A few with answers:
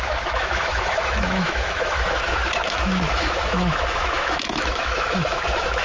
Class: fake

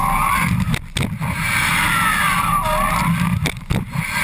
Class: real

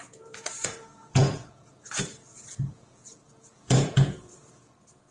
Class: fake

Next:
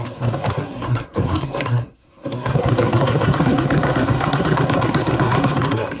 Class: fake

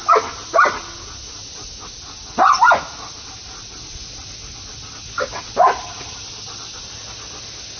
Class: real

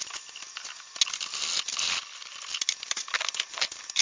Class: real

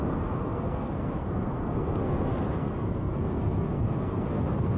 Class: fake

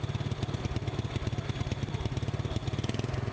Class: real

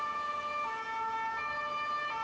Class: real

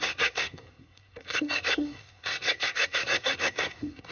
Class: fake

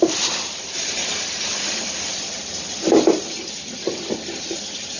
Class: real